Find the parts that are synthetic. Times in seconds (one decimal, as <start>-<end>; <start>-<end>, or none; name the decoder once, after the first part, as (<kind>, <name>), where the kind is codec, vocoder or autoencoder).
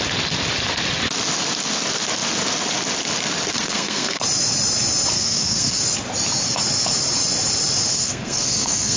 3.5-4.2 (codec, SNAC); 5.1-5.8; 7.9-9.0